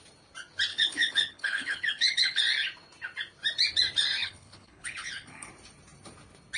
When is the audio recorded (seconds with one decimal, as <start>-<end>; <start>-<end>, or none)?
0.0-0.7; 2.4-4.2; 5.5-6.6